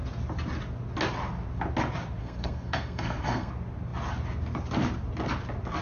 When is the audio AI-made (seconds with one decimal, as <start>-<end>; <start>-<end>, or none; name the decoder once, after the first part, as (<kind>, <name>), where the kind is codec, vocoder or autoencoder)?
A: 2.2-3.5 (codec, SNAC)